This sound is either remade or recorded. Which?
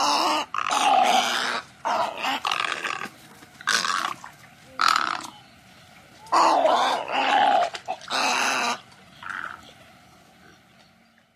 recorded